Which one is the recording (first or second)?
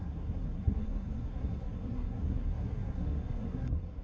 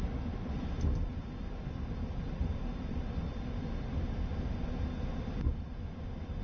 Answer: second